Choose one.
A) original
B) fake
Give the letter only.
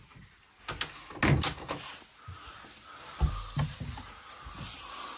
A